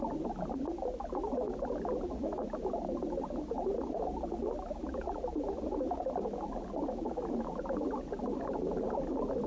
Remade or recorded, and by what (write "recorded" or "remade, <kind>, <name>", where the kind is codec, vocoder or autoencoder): recorded